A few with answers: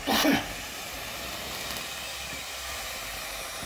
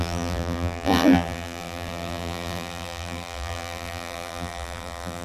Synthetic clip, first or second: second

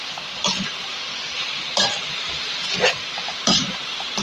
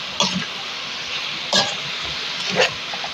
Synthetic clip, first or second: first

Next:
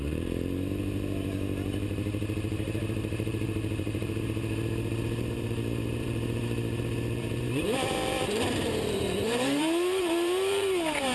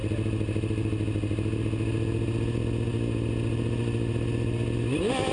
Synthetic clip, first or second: first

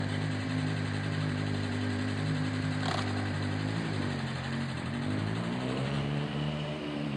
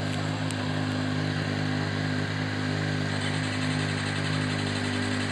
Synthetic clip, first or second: first